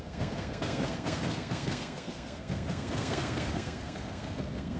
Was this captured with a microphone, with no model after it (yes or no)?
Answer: no